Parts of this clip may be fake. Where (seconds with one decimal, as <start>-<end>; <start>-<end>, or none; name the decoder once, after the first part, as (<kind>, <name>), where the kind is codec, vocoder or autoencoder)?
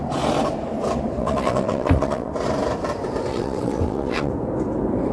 1.2-2.3 (vocoder, WaveNeXt); 3.3-4.3